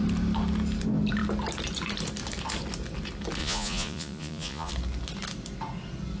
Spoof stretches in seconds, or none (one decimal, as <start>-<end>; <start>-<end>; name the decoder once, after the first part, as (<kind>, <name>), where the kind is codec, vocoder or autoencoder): 3.4-4.7 (vocoder, Vocos)